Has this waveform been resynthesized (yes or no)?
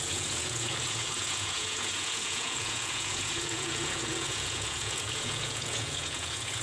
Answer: yes